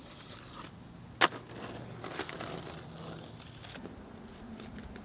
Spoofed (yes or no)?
no